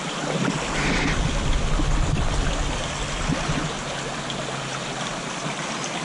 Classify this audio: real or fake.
real